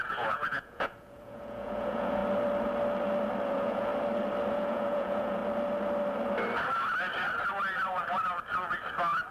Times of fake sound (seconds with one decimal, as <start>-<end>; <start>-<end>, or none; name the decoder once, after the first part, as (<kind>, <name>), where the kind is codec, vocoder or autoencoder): 0.0-2.2 (vocoder, Vocos); 3.5-3.9; 4.5-5.4